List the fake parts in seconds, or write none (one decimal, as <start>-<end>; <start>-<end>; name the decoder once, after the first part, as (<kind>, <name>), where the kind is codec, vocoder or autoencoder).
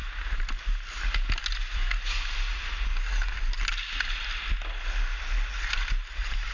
none